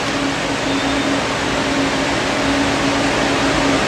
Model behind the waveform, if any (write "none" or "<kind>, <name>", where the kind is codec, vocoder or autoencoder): none